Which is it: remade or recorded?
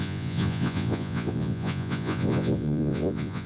remade